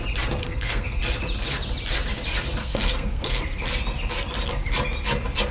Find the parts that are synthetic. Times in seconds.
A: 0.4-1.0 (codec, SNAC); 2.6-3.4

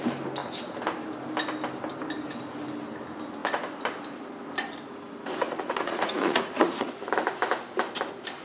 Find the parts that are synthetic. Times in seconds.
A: 5.4-6.9 (vocoder, Vocos)

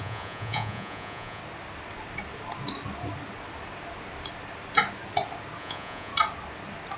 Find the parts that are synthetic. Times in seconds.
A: 0.0-1.4 (vocoder, Vocos); 5.6-6.1